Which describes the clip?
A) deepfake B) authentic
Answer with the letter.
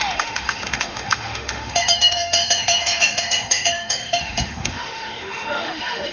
A